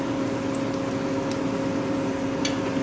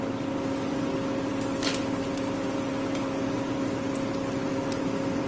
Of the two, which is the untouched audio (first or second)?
first